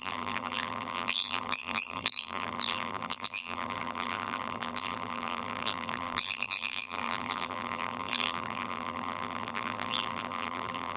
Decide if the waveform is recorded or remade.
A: remade